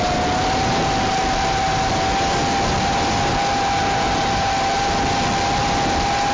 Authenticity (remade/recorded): recorded